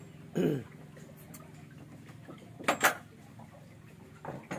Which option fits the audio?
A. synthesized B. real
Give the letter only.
B